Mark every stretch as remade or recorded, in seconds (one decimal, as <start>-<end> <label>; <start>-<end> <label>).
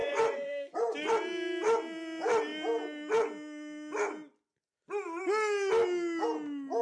0.0-1.1 remade; 1.1-6.8 recorded